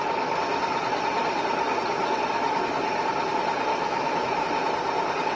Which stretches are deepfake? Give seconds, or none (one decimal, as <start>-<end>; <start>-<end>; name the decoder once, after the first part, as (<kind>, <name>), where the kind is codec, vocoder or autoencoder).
3.7-4.4 (autoencoder, DAC-VAE)